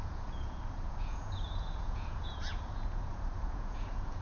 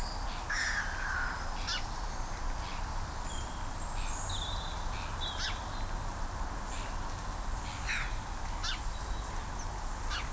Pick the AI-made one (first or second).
first